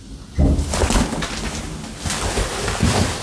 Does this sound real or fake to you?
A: real